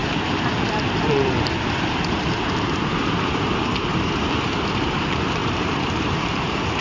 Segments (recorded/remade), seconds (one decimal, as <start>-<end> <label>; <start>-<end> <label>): 0.0-6.8 remade